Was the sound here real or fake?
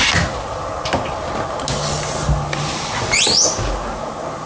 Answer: real